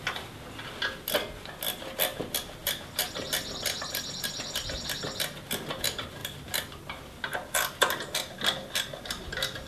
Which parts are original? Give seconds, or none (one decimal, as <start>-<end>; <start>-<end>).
0.0-9.7